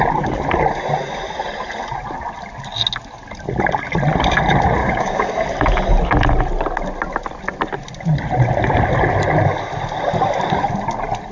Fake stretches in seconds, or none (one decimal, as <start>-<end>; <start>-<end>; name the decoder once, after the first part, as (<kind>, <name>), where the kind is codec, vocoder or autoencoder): 4.8-5.3 (codec, DAC)